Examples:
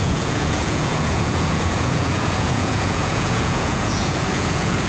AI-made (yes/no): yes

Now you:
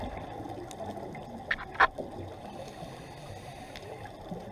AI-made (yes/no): no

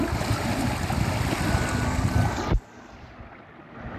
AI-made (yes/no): no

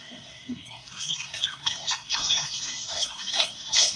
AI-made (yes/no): yes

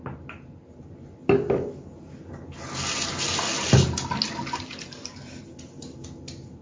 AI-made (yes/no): no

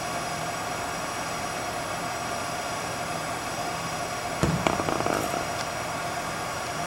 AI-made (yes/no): yes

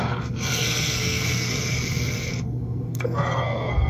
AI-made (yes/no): yes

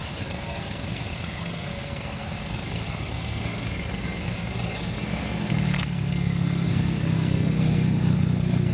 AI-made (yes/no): yes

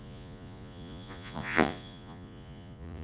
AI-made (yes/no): yes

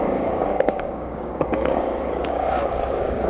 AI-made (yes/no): yes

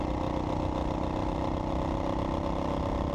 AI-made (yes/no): no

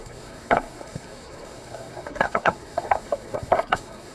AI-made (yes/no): yes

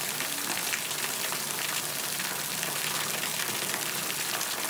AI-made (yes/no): no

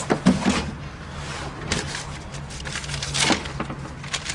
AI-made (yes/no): no